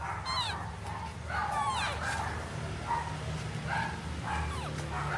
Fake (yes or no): no